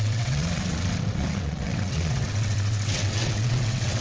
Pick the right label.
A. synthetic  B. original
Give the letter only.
A